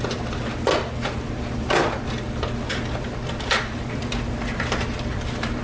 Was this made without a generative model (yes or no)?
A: yes